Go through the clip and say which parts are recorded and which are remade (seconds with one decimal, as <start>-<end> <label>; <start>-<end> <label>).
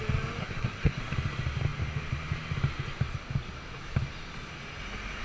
0.0-0.4 recorded; 0.4-1.0 remade; 1.0-5.2 recorded